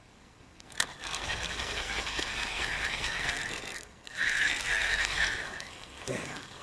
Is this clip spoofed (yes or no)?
yes